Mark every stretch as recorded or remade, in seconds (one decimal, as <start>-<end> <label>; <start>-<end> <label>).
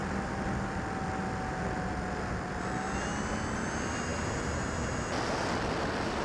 0.0-6.2 recorded